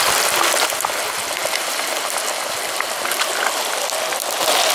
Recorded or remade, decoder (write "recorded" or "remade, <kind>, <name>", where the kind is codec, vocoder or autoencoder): recorded